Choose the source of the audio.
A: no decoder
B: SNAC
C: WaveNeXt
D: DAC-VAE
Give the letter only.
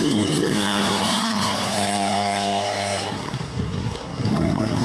B